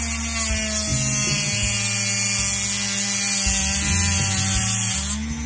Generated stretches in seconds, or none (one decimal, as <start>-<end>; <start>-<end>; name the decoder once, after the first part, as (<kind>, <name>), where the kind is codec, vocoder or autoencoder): none